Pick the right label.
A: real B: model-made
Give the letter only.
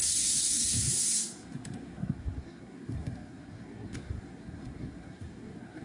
B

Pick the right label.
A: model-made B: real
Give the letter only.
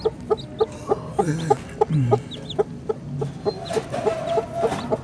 B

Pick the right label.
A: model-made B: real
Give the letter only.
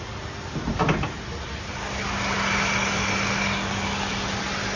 B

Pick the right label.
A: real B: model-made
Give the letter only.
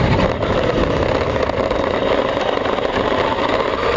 A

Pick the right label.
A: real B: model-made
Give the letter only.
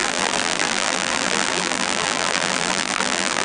B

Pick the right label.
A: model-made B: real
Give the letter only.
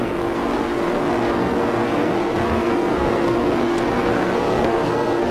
A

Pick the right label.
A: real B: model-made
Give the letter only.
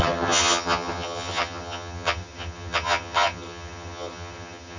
B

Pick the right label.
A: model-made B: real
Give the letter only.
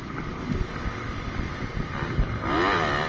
B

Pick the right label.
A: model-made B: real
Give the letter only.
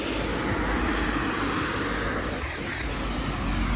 B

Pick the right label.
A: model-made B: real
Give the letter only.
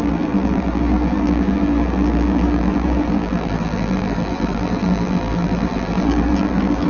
A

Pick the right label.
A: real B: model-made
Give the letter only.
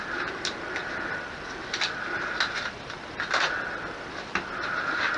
A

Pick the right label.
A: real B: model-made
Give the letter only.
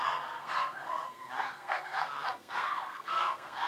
B